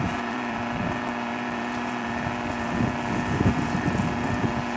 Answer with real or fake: fake